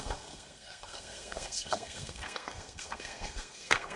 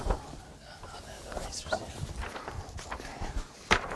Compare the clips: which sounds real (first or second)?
second